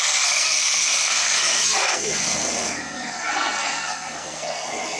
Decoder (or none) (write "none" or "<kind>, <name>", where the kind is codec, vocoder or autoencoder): codec, SNAC